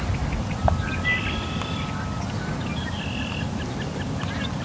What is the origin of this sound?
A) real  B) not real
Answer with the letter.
A